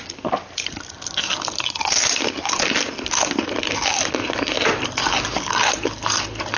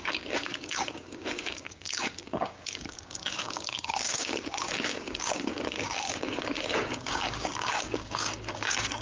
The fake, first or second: second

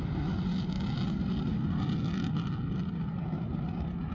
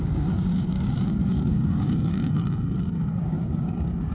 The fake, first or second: second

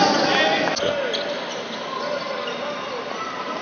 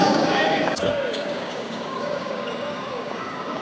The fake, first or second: second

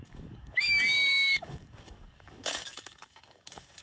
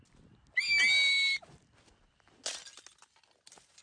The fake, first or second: first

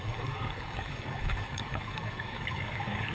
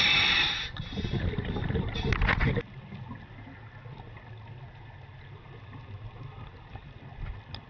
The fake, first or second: first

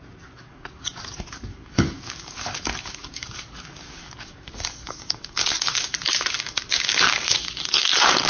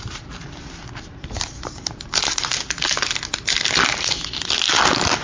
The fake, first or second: first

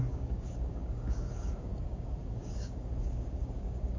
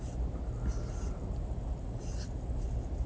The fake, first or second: first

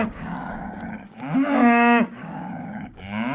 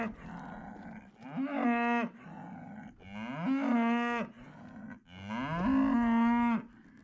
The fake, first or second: first